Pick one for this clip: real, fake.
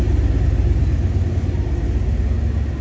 real